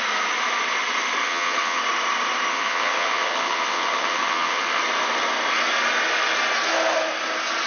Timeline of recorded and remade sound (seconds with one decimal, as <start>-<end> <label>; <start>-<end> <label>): 0.0-1.2 recorded; 1.2-1.8 remade; 1.8-2.5 recorded; 2.5-4.8 remade; 4.8-7.7 recorded